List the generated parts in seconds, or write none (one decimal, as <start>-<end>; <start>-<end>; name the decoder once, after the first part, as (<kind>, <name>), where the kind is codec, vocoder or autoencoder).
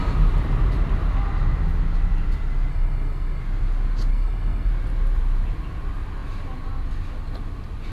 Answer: 2.7-3.4 (codec, SNAC); 4.1-4.7